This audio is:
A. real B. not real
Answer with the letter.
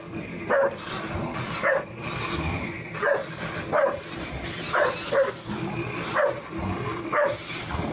A